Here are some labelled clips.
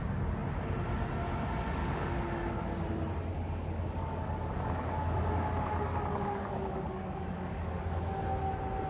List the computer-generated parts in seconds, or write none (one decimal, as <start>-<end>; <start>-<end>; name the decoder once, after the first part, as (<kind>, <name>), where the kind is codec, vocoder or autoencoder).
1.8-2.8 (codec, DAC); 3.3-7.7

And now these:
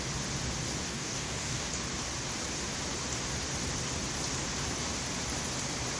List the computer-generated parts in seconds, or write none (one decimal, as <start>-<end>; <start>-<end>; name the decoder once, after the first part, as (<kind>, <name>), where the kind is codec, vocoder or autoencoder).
0.9-1.7 (codec, DAC)

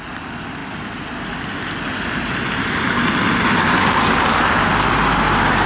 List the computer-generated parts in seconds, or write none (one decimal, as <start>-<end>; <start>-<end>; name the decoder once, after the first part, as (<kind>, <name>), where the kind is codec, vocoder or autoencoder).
none

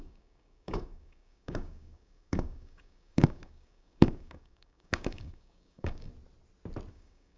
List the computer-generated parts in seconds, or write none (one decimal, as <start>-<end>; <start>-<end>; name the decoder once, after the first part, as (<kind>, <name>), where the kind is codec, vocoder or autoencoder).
0.0-6.1 (codec, DAC); 6.9-7.4